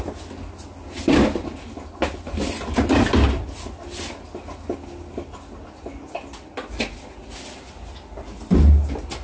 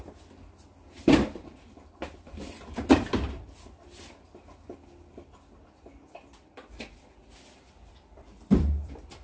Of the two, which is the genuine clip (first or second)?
first